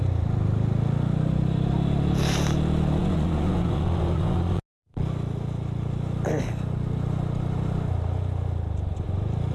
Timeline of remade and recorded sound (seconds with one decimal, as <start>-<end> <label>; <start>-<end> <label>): 0.0-3.0 recorded; 3.0-4.6 remade; 4.6-9.5 recorded

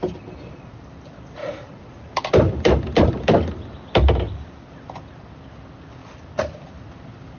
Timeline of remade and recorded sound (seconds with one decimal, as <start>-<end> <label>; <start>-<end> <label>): 0.0-1.4 recorded; 1.4-2.1 remade; 2.1-7.4 recorded

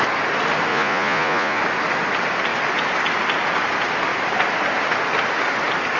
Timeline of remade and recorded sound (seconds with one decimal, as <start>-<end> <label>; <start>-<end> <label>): 0.0-0.7 recorded; 0.7-1.6 remade; 1.6-6.0 recorded

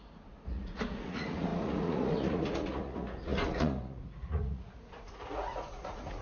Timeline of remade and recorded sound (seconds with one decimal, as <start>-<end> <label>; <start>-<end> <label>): 0.0-6.2 remade

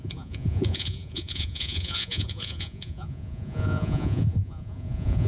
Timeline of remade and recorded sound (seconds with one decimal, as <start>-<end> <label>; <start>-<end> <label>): 0.0-5.3 remade

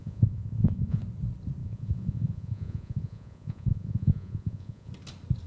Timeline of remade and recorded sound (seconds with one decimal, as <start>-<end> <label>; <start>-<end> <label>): 0.0-1.0 remade; 1.0-1.6 recorded; 1.6-4.9 remade; 4.9-5.5 recorded